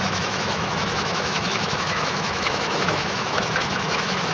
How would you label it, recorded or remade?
remade